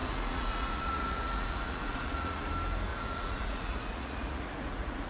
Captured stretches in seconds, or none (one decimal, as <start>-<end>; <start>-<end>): 2.5-2.9